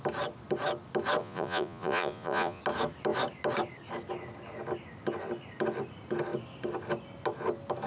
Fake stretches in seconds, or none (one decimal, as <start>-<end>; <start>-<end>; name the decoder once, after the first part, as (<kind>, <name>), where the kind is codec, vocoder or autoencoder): 1.2-2.6 (vocoder, Vocos)